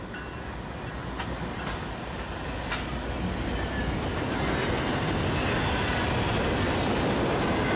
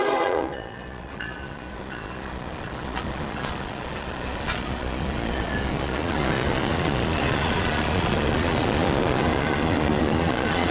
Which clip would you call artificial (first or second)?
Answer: second